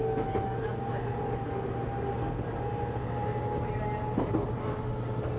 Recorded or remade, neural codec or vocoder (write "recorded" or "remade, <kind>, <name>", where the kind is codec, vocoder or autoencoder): recorded